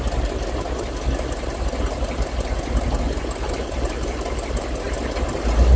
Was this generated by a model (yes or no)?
no